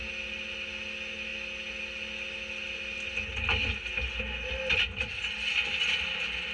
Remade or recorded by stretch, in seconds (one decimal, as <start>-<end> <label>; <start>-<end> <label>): 0.0-6.5 recorded